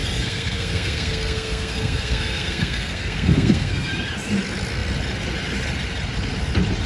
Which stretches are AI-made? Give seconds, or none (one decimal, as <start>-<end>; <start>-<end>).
0.0-3.9